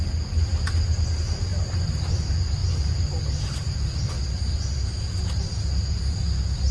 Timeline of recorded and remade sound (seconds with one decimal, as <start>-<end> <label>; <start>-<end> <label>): 0.0-6.7 recorded